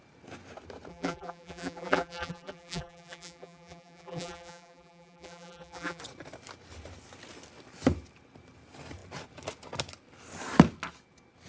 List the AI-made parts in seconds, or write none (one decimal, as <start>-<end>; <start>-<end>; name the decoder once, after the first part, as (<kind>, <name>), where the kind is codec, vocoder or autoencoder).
0.9-6.0 (vocoder, BigVGAN v2)